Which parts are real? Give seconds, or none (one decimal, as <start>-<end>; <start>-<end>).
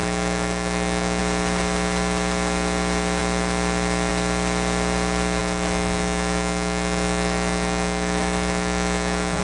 1.2-5.4